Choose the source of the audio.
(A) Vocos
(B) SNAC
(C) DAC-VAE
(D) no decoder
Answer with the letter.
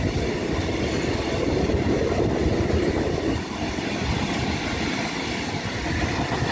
D